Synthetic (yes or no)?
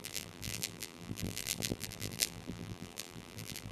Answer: yes